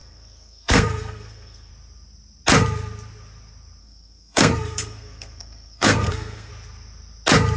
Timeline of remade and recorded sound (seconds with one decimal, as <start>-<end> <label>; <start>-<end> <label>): 0.0-1.7 remade; 1.7-3.8 recorded; 3.8-6.5 remade; 6.5-7.6 recorded